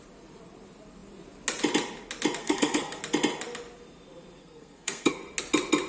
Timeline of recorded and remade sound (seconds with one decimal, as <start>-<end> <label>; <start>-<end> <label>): 0.0-2.4 recorded; 2.4-3.0 remade; 3.0-4.4 recorded; 4.4-5.2 remade; 5.2-5.9 recorded